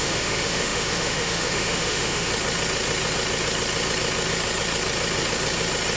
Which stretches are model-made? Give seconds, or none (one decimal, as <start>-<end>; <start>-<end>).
0.0-2.3